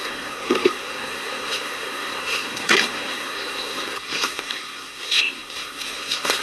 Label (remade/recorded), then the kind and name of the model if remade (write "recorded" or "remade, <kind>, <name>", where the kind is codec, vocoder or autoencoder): remade, codec, SNAC